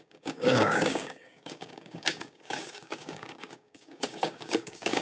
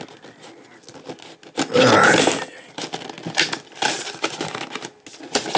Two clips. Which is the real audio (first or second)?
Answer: second